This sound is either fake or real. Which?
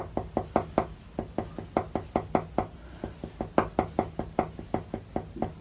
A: real